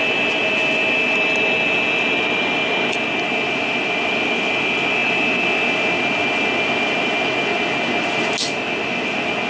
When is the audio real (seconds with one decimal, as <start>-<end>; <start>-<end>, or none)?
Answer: 0.0-9.5